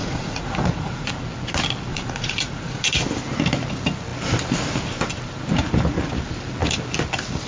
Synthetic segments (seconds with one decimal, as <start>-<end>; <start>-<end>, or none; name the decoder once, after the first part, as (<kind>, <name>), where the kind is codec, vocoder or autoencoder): 0.0-1.1 (vocoder, Vocos); 1.9-2.9